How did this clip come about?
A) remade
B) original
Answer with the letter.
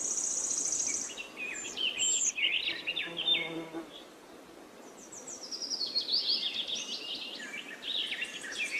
B